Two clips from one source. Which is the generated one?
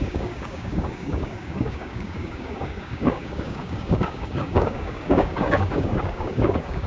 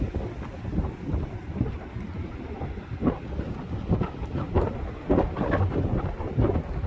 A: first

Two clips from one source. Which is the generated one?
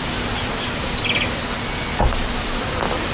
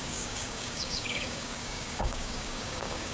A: second